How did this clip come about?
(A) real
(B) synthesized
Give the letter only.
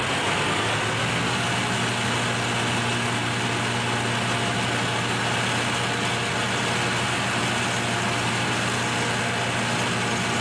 A